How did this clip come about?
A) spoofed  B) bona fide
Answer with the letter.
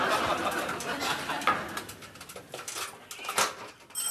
B